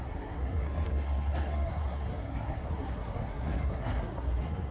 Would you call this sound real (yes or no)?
no